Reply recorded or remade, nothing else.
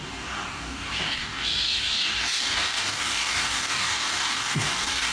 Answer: remade